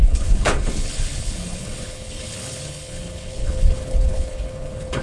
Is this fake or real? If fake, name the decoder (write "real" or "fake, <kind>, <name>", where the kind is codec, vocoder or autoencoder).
fake, codec, HILCodec